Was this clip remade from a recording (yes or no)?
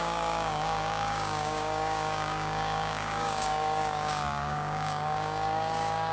yes